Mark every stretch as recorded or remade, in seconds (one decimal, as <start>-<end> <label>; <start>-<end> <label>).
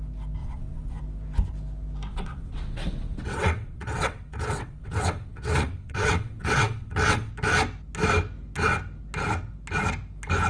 0.0-0.4 recorded; 0.4-1.0 remade; 1.0-2.1 recorded; 2.1-7.3 remade; 7.3-10.5 recorded